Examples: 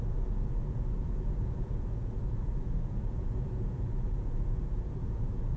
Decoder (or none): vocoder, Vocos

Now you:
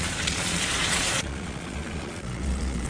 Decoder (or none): vocoder, Vocos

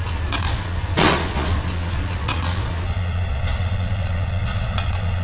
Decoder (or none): vocoder, Vocos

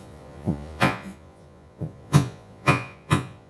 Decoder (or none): vocoder, Vocos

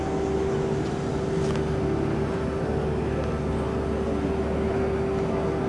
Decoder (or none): none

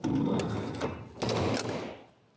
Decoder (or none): none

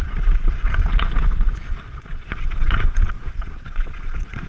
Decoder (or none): vocoder, Vocos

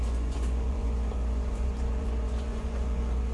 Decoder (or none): vocoder, Vocos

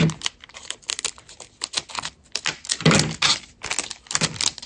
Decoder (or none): none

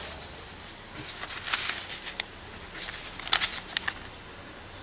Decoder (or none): none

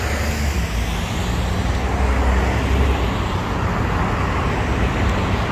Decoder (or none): none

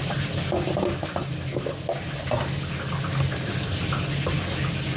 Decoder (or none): none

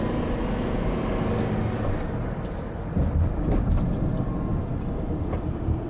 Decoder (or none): none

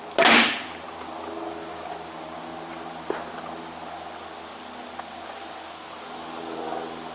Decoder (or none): none